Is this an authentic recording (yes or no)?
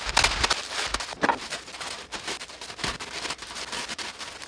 yes